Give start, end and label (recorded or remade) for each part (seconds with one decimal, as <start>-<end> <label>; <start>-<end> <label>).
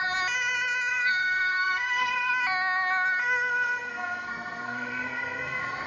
0.0-0.9 recorded; 0.9-2.3 remade; 2.3-3.2 recorded; 3.2-5.9 remade